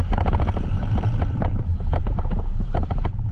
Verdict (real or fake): fake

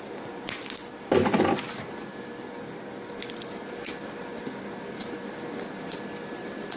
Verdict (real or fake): real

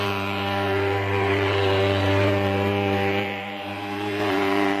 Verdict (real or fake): fake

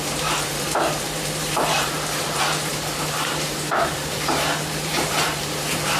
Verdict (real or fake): fake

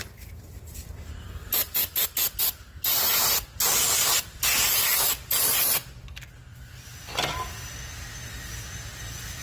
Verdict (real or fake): real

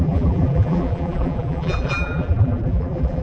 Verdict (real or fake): fake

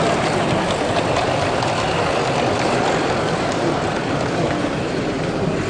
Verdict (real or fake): fake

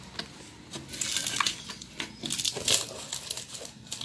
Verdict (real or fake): real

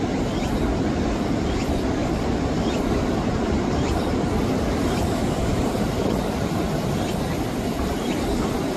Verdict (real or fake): fake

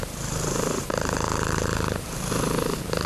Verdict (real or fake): fake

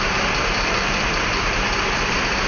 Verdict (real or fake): fake